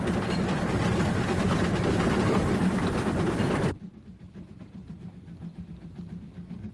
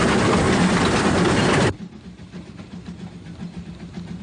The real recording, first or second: second